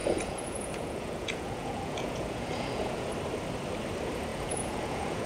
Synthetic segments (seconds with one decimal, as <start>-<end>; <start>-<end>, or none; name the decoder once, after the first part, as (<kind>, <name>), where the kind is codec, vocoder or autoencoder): 0.0-3.1 (vocoder, Vocos); 4.3-5.3